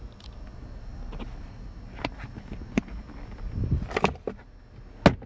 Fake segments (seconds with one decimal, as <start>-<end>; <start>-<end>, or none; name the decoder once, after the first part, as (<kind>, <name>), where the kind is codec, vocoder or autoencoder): 0.9-4.1 (vocoder, BigVGAN v2)